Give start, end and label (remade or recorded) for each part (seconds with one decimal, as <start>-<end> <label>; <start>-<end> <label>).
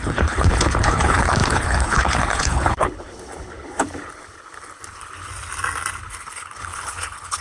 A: 0.0-5.3 remade; 5.3-6.0 recorded; 6.0-7.4 remade